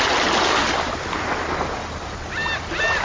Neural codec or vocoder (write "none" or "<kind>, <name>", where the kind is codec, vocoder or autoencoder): none